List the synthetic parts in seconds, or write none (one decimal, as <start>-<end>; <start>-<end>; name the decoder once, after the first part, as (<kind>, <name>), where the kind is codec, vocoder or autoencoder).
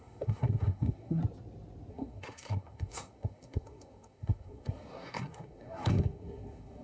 0.0-1.2 (codec, SNAC); 1.9-6.8